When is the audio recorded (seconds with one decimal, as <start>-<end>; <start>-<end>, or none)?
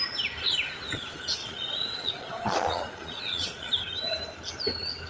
0.0-1.4; 3.7-5.1